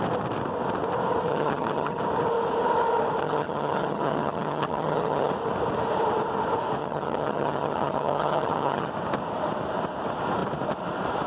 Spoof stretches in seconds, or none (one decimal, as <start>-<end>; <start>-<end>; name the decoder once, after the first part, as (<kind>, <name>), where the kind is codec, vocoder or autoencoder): 1.3-2.0 (vocoder, HiFi-GAN); 3.2-5.3; 6.8-8.9